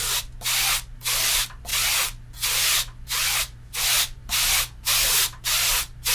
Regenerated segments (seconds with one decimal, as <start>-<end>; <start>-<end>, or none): none